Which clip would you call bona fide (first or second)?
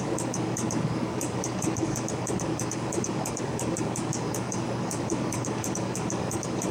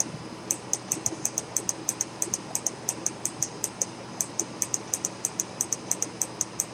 second